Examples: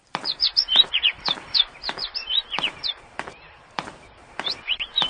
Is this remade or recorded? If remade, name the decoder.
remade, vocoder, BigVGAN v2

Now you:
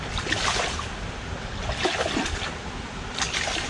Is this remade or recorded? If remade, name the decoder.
recorded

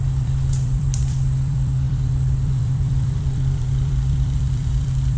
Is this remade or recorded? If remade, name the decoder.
remade, vocoder, BigVGAN v2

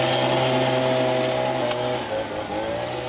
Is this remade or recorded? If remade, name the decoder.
recorded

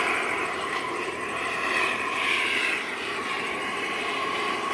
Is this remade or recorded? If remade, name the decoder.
remade, vocoder, BigVGAN v2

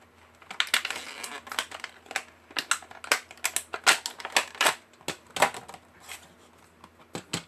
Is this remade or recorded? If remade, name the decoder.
recorded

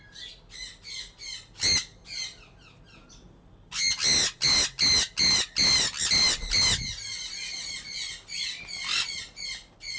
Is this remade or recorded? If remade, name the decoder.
recorded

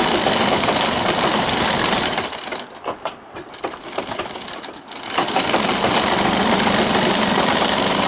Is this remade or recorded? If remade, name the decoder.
recorded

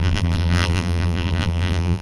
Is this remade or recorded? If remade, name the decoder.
remade, vocoder, BigVGAN v2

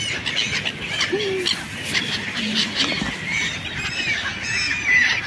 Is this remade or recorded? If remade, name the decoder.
recorded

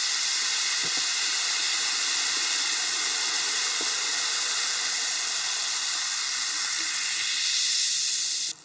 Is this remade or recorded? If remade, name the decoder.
recorded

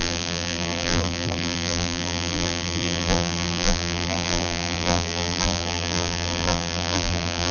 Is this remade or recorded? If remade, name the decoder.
remade, vocoder, BigVGAN v2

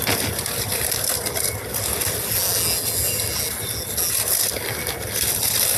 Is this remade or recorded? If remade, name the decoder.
recorded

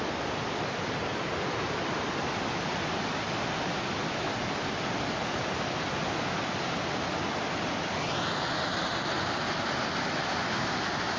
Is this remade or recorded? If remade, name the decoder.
recorded